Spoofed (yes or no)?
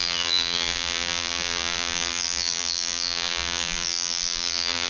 yes